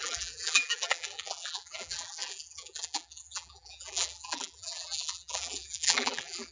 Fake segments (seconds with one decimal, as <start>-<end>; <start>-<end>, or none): 0.0-6.5